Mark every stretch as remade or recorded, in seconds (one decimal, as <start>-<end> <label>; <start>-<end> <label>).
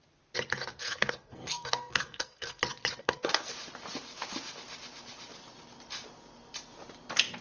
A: 0.0-0.7 recorded; 0.7-2.6 remade; 2.6-3.0 recorded; 3.0-3.5 remade; 3.5-7.4 recorded